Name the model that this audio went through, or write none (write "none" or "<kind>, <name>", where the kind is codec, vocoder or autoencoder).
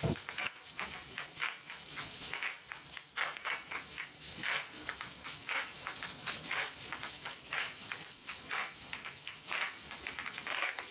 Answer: codec, SNAC